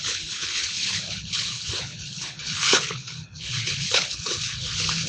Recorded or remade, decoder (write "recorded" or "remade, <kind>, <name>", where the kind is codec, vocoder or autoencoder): remade, codec, HILCodec